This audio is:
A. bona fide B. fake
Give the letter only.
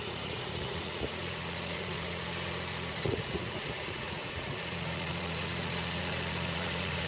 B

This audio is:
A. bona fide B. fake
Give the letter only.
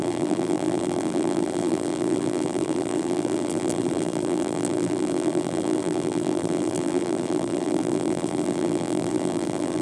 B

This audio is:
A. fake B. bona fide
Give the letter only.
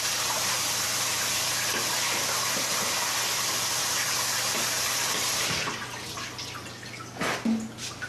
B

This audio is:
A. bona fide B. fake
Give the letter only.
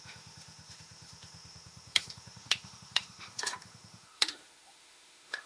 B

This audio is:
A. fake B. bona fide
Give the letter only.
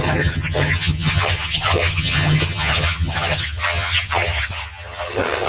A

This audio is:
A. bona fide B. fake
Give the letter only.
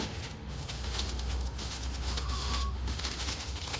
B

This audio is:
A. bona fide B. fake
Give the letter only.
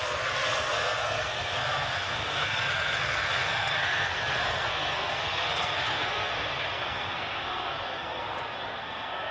B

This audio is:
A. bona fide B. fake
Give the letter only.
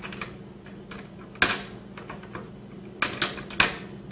A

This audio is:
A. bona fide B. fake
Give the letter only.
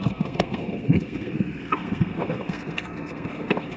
B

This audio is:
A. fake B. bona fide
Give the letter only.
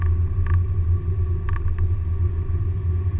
B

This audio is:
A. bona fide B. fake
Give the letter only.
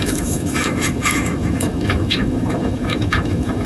B